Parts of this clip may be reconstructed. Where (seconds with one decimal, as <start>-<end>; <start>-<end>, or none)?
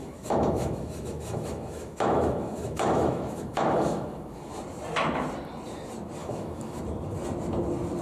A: 0.0-4.5; 6.2-6.8